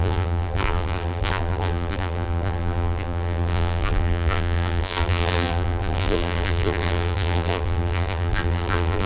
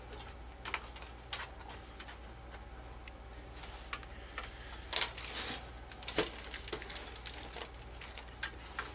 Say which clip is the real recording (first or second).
second